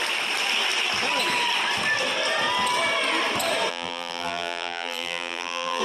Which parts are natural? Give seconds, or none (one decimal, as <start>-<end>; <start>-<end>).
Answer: 0.0-3.7